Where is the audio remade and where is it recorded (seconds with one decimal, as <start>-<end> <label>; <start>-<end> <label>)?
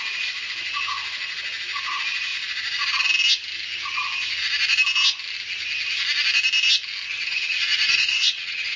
0.0-7.1 recorded; 7.1-8.8 remade